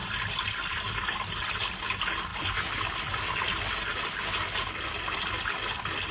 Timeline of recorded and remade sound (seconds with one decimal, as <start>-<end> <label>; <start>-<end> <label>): 0.0-1.2 remade; 1.2-6.1 recorded

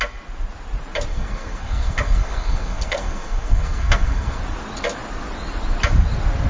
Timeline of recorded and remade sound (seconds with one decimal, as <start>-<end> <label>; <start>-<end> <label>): 0.0-1.1 recorded; 1.1-4.4 remade; 4.4-6.5 recorded

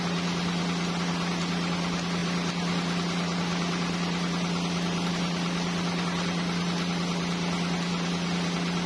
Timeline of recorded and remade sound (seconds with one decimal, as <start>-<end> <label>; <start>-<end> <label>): 0.0-8.9 recorded